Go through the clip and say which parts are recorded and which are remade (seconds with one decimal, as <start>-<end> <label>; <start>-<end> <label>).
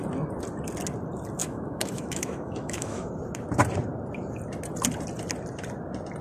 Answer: 0.0-1.4 recorded; 1.4-3.1 remade; 3.1-6.2 recorded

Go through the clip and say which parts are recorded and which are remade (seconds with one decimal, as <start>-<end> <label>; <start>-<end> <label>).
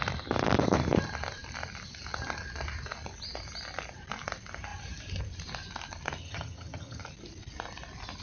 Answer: 0.0-6.2 recorded; 6.2-7.0 remade; 7.0-8.2 recorded